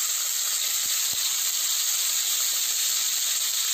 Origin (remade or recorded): recorded